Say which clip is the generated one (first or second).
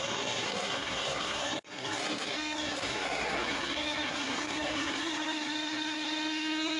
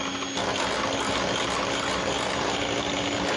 first